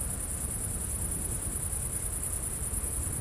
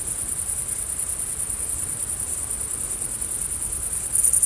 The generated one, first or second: second